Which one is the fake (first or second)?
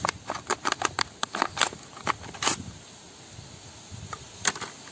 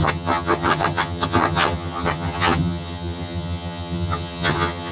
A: second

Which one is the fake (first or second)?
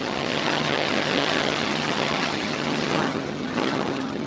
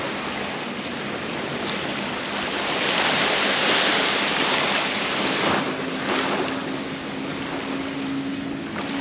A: first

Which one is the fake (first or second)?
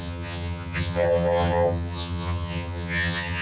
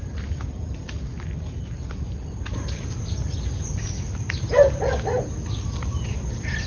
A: first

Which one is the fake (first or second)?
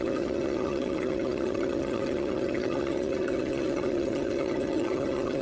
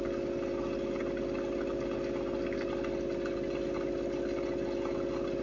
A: first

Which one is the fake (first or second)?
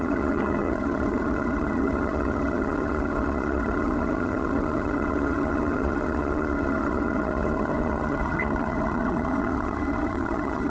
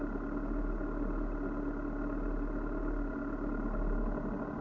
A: first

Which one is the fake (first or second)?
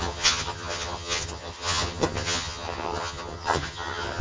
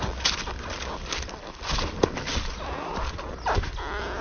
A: first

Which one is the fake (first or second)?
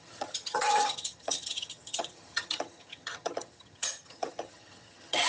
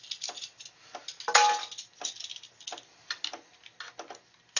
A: first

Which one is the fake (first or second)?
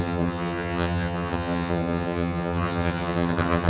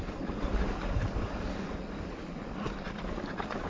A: first